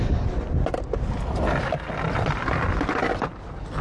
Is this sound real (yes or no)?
yes